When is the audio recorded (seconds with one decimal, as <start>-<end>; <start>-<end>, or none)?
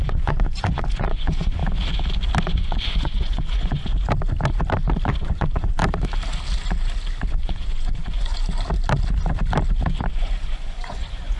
1.6-2.4; 3.9-5.2; 5.8-7.3; 8.3-10.1